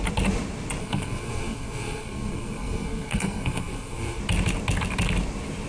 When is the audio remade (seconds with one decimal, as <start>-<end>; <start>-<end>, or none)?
0.8-4.2

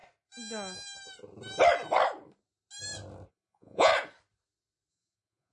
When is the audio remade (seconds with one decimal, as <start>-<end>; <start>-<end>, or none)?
3.3-3.9; 4.9-5.5

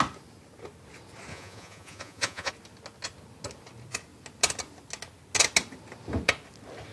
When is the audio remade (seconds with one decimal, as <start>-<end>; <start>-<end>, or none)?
1.3-2.5

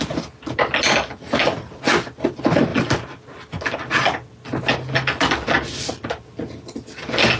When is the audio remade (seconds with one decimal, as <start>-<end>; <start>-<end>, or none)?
none

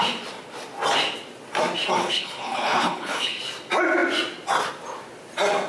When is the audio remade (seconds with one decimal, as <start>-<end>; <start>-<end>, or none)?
2.0-3.4

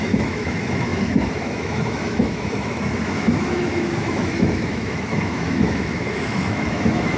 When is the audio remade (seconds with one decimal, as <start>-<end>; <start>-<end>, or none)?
0.0-7.2